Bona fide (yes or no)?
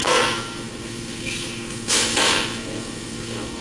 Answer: no